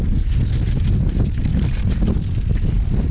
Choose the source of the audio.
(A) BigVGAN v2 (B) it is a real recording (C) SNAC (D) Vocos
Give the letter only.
B